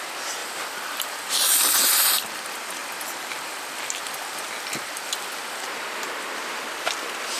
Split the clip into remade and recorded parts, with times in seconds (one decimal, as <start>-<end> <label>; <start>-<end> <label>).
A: 0.0-0.4 recorded; 0.4-1.3 remade; 1.3-7.4 recorded